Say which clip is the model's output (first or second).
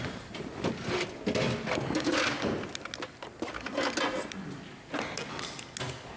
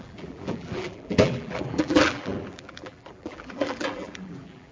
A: second